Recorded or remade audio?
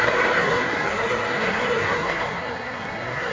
remade